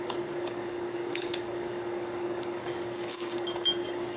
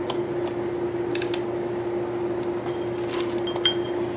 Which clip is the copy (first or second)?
first